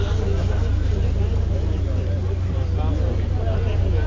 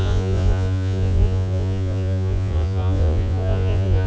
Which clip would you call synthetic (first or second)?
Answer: second